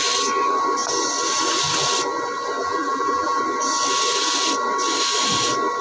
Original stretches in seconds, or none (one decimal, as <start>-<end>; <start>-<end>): 0.0-2.6; 3.4-5.8